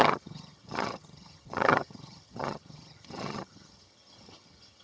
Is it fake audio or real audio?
fake